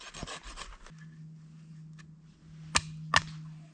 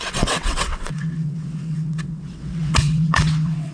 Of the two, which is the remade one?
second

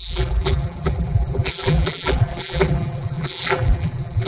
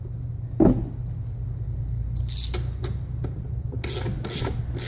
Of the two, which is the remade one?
first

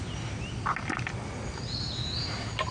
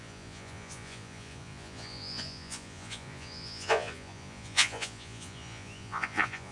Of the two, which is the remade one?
second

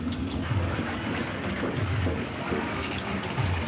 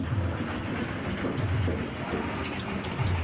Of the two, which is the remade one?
first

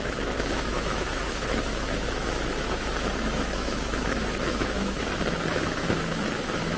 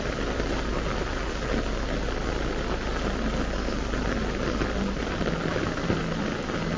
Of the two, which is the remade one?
first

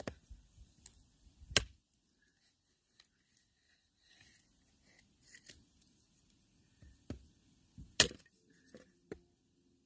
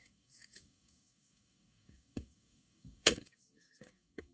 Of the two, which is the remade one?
second